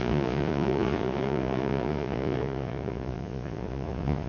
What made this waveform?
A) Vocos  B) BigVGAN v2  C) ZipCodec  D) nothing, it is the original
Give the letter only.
A